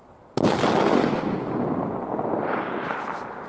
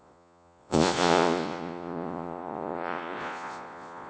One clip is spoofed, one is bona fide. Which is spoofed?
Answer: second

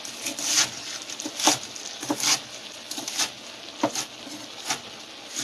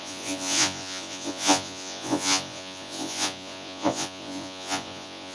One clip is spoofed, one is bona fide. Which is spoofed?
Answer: second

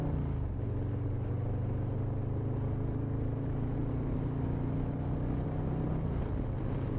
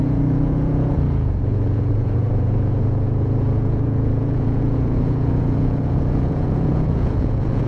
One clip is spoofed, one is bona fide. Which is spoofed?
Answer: second